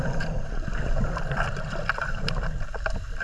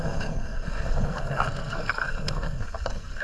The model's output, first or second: second